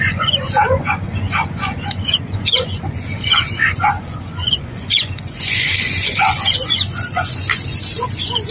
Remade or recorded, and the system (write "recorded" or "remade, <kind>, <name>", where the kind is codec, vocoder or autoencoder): remade, vocoder, Vocos